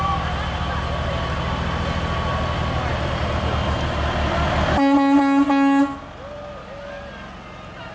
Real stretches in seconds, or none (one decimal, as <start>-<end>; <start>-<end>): 0.0-6.6; 7.1-7.9